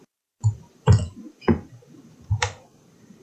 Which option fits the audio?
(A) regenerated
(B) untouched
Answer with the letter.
A